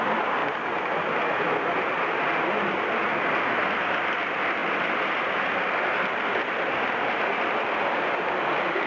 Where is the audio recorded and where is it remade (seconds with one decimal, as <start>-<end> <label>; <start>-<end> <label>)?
0.0-4.6 recorded; 4.6-8.0 remade; 8.0-8.9 recorded